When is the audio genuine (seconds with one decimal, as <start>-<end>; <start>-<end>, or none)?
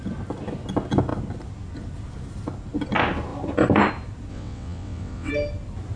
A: 0.0-4.3; 5.3-6.0